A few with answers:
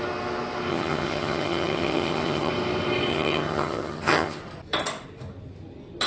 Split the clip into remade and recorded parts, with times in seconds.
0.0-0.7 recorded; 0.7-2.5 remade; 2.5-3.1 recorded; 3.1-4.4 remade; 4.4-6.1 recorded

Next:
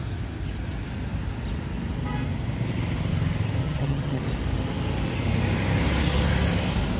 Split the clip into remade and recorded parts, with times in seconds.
0.0-3.6 recorded; 3.6-4.2 remade; 4.2-7.0 recorded

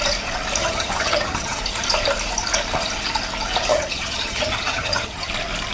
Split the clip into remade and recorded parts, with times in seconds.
0.0-0.6 recorded; 0.6-1.6 remade; 1.6-3.7 recorded; 3.7-5.3 remade; 5.3-5.7 recorded

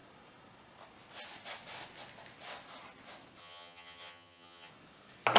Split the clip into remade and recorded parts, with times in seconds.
0.0-3.4 recorded; 3.4-4.7 remade; 4.7-5.4 recorded

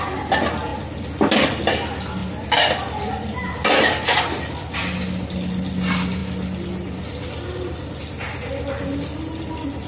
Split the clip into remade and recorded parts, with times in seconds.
0.0-9.9 recorded